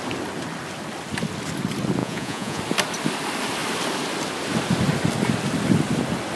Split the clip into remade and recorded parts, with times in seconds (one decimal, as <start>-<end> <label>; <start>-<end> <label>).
0.0-2.0 recorded; 2.0-2.6 remade; 2.6-6.4 recorded